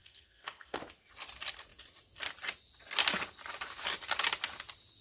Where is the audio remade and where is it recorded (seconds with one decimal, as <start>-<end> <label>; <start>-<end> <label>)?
0.0-0.8 remade; 0.8-5.0 recorded